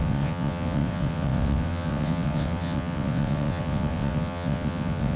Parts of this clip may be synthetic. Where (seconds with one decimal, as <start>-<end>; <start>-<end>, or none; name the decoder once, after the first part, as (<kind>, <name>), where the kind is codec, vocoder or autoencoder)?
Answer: 0.0-5.2 (vocoder, WaveNeXt)